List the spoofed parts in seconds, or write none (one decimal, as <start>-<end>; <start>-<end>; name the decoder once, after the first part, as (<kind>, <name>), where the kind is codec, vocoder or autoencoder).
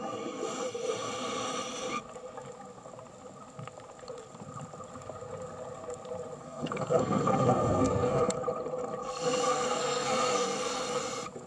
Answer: 6.4-8.4 (codec, SNAC); 9.0-11.0